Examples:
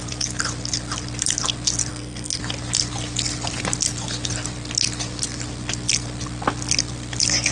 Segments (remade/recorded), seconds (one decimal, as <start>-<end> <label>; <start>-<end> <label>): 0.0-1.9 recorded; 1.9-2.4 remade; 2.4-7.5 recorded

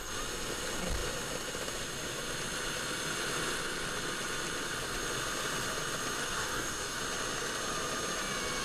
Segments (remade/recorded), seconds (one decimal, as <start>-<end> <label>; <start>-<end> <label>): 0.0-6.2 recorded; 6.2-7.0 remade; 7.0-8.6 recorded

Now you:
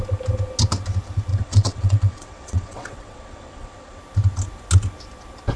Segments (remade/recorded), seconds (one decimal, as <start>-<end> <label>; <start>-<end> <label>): 0.0-1.3 recorded; 1.3-4.0 remade; 4.0-5.6 recorded

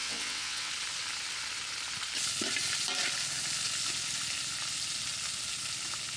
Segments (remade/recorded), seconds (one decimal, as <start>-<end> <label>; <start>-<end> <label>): 0.0-0.7 remade; 0.7-6.2 recorded